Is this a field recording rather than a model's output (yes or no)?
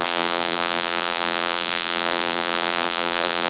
no